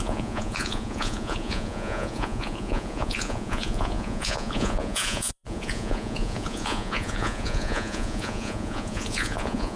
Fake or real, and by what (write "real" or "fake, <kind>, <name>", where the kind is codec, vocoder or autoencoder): fake, vocoder, Vocos